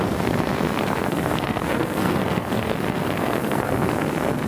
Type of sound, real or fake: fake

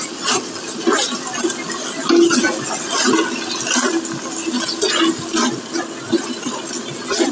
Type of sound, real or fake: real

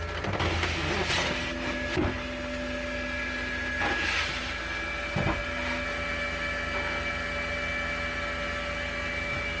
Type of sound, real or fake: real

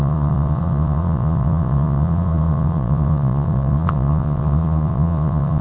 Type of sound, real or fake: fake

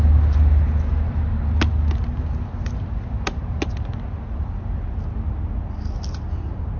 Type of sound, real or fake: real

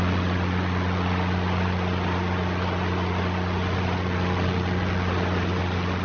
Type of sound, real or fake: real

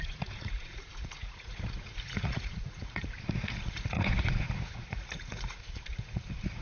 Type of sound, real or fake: fake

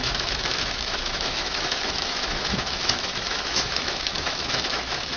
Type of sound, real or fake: fake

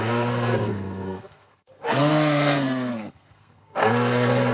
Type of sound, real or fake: fake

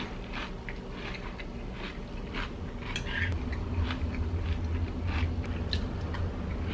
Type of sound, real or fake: real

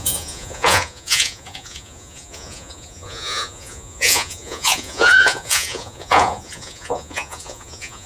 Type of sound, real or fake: fake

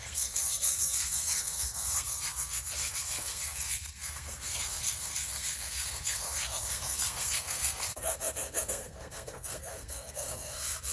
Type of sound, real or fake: fake